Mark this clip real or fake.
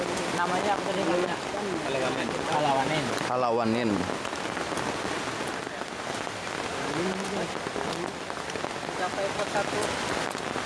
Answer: real